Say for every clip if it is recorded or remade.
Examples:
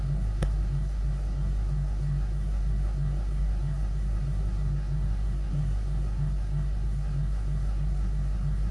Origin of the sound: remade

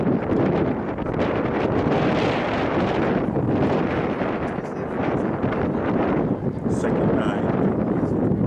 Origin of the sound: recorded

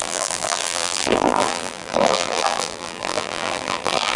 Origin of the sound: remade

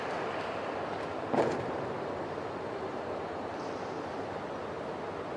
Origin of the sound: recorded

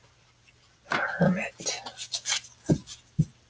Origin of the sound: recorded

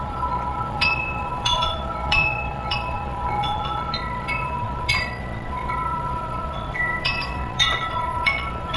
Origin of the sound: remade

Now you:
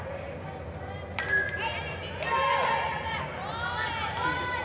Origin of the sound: recorded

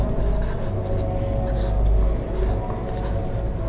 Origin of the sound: recorded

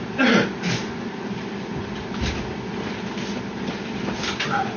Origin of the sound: recorded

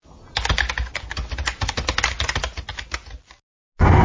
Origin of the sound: recorded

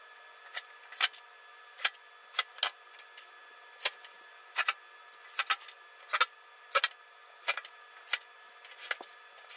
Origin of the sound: recorded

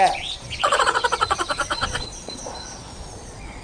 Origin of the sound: remade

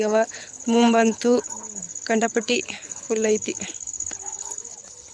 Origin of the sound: remade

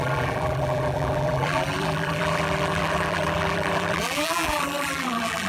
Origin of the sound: remade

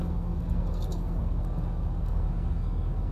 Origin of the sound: remade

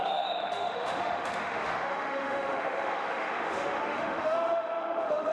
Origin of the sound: remade